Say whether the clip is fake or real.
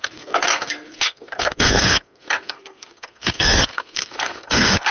fake